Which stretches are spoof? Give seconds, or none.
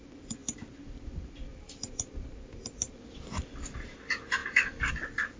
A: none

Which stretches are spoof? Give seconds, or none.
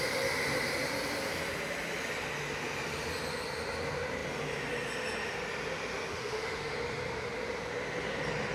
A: 6.1-6.7 (autoencoder, DAC-VAE)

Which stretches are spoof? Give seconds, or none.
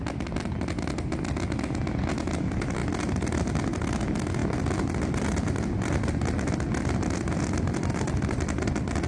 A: none